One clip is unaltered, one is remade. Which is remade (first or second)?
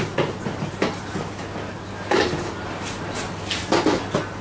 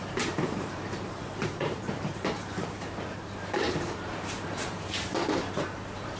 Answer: second